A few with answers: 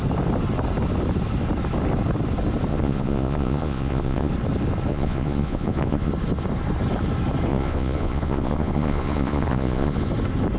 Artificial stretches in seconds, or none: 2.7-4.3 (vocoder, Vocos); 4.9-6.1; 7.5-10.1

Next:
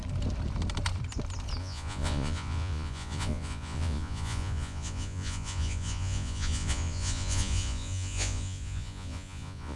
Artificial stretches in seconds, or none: 1.6-9.8 (vocoder, Vocos)